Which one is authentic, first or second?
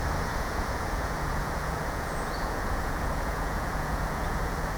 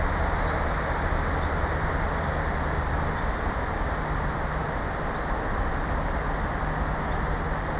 second